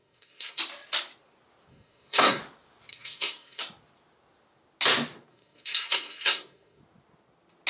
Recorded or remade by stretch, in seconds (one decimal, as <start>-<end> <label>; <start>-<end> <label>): 0.0-0.6 remade; 0.6-1.7 recorded; 1.7-2.4 remade; 2.4-2.9 recorded; 2.9-3.6 remade; 3.6-5.3 recorded; 5.3-6.8 remade; 6.8-7.7 recorded